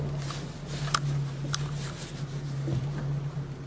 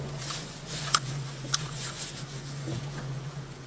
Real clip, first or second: first